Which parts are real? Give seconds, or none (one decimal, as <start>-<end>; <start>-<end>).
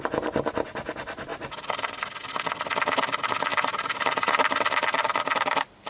0.0-3.5; 4.6-5.9